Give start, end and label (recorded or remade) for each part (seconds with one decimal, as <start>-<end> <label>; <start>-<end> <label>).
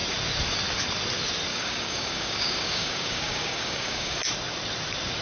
0.0-1.5 recorded; 1.5-4.2 remade; 4.2-5.2 recorded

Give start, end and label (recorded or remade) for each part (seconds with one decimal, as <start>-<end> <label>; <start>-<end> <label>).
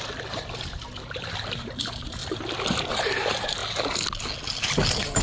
0.0-2.2 remade; 2.2-2.9 recorded; 2.9-3.6 remade; 3.6-5.2 recorded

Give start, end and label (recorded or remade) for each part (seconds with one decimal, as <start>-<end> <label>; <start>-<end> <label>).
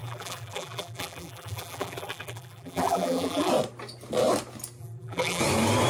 0.0-3.5 remade; 3.5-4.8 recorded; 4.8-5.4 remade; 5.4-5.9 recorded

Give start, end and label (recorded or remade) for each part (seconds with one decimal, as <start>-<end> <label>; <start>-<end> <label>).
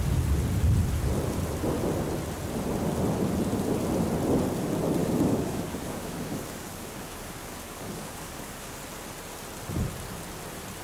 0.0-5.0 recorded; 5.0-8.8 remade; 8.8-10.8 recorded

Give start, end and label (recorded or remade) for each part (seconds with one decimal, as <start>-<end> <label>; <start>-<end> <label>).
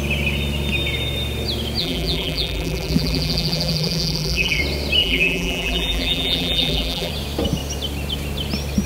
0.0-1.8 recorded; 1.8-4.6 remade; 4.6-5.0 recorded; 5.0-7.1 remade; 7.1-8.9 recorded